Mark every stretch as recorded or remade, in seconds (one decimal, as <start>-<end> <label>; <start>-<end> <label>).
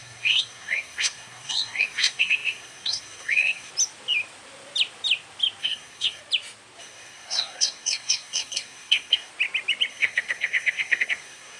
0.0-3.7 remade; 3.7-5.6 recorded; 5.6-6.2 remade; 6.2-6.8 recorded; 6.8-9.3 remade; 9.3-9.9 recorded; 9.9-11.6 remade